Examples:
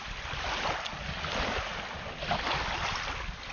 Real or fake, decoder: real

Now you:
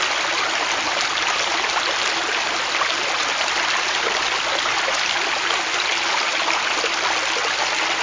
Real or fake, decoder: real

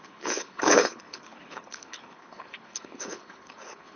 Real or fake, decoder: fake, codec, HILCodec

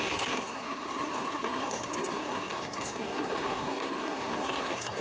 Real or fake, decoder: fake, codec, SNAC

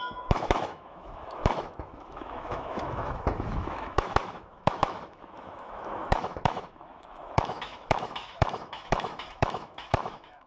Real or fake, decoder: fake, autoencoder, DAC-VAE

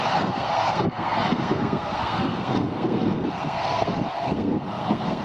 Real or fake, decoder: fake, codec, SNAC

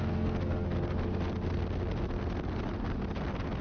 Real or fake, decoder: real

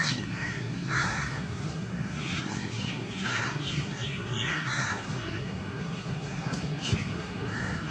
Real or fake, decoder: fake, codec, SNAC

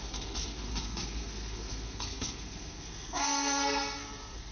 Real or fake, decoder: fake, codec, SNAC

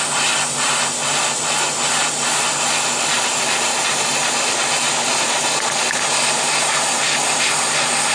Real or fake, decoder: real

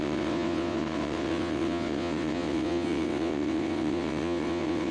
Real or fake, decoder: fake, vocoder, WaveNeXt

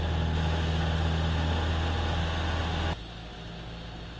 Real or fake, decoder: real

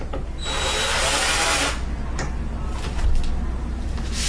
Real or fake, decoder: real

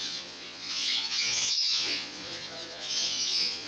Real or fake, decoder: fake, vocoder, Vocos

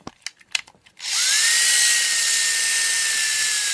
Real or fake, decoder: real